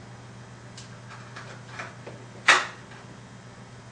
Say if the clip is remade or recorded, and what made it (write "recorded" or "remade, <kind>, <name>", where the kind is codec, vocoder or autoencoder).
recorded